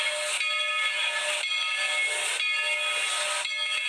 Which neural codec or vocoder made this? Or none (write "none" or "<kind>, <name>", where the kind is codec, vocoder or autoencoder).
none